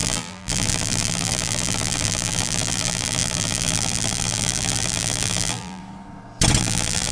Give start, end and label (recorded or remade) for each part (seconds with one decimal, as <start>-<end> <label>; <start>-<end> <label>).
0.0-5.8 remade; 5.8-6.6 recorded; 6.6-7.1 remade